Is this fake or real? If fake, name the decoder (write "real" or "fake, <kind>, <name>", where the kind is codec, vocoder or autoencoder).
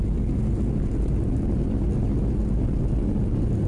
real